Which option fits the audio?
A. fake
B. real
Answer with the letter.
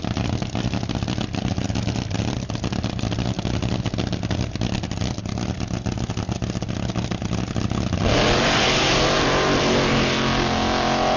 B